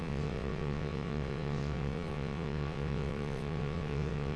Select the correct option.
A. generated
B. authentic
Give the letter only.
A